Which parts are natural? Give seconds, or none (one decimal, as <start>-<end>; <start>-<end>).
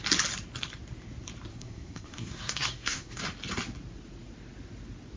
0.0-1.5; 3.2-5.2